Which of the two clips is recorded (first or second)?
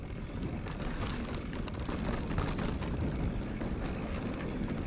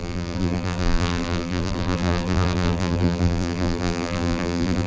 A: first